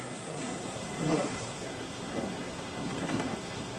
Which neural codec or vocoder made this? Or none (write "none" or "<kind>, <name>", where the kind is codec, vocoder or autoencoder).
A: codec, SNAC